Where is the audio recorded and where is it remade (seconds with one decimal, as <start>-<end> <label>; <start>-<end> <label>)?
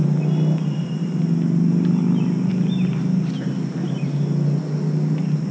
0.0-5.5 recorded